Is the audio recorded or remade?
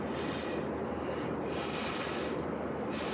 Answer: recorded